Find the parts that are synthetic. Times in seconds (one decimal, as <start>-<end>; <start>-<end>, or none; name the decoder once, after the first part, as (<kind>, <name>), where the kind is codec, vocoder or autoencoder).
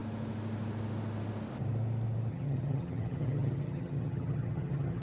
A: 2.3-5.0 (vocoder, HiFi-GAN)